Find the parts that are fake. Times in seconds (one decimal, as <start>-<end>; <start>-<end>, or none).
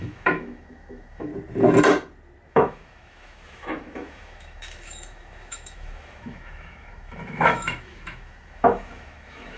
0.0-1.3; 2.5-9.6